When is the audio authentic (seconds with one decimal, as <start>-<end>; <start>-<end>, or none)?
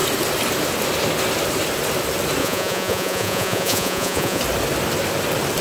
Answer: 0.0-2.4; 4.4-5.6